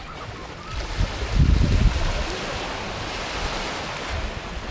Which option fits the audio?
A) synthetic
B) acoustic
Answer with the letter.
B